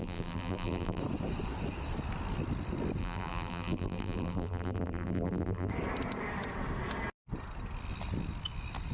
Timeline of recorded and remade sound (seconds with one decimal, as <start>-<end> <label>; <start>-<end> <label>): 0.0-1.0 remade; 1.0-3.0 recorded; 3.0-5.7 remade; 5.7-8.9 recorded